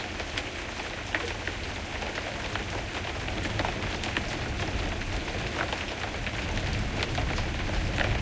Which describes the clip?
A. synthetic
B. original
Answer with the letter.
B